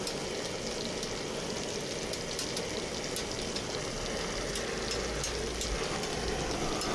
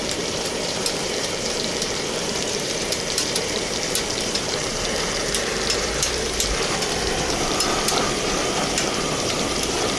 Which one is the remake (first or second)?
second